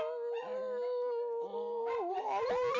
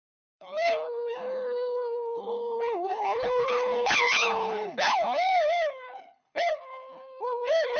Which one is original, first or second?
first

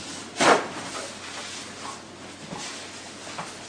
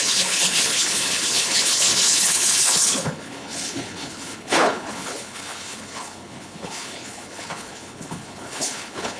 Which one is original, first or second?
first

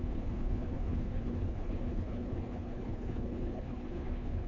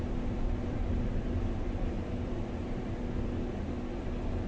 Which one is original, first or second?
second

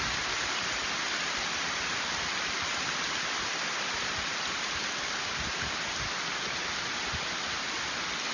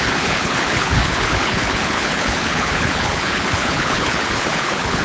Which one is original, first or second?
first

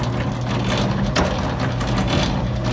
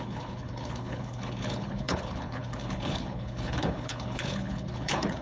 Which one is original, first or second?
first